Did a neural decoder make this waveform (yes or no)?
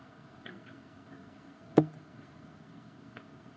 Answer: yes